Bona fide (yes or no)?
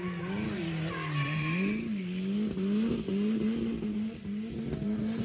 yes